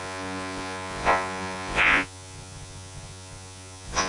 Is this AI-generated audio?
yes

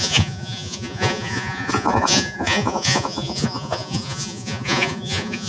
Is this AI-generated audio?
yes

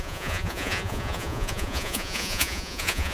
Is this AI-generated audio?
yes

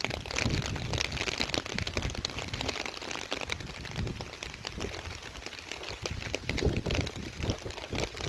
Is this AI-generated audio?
no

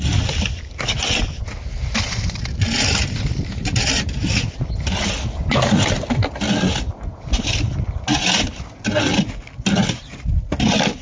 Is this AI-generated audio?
no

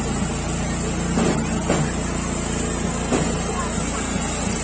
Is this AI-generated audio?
no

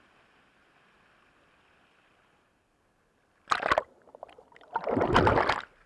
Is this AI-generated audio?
no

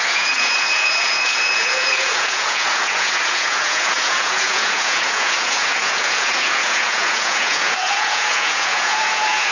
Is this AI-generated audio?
yes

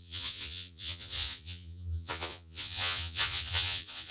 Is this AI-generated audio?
yes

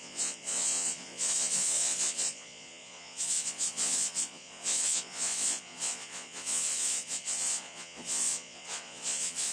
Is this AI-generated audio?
yes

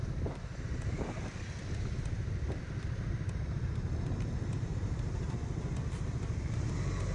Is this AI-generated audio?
no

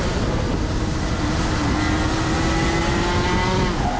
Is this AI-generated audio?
no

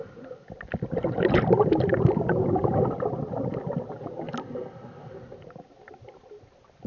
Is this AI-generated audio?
no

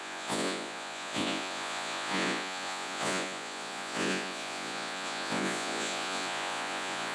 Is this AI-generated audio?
yes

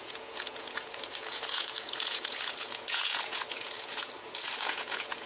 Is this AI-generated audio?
yes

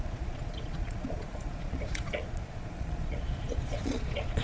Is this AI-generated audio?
yes